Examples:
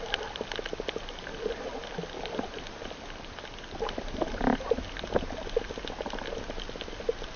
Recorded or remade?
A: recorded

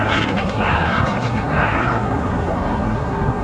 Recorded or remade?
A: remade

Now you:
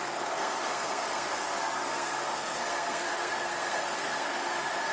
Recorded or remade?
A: remade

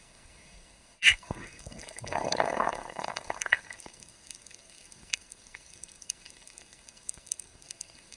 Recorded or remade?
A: remade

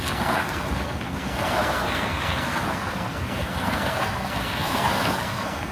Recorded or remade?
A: remade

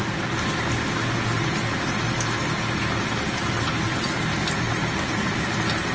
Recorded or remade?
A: recorded